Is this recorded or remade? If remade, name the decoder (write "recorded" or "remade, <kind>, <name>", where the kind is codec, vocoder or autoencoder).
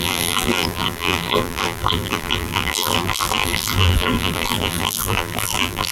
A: remade, vocoder, BigVGAN v2